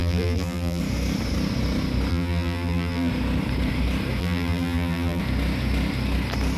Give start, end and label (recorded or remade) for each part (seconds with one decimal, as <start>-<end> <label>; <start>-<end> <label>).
0.0-0.8 remade; 0.8-2.1 recorded; 2.1-3.1 remade; 3.1-4.2 recorded; 4.2-5.2 remade; 5.2-6.6 recorded